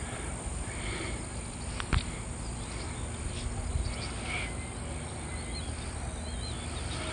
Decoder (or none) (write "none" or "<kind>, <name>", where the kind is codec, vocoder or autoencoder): none